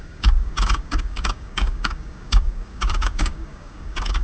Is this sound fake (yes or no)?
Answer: yes